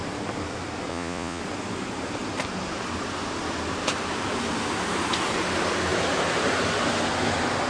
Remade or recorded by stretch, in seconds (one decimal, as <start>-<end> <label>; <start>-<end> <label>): 0.0-0.9 recorded; 0.9-1.4 remade; 1.4-7.7 recorded